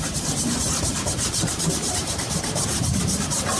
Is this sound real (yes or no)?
no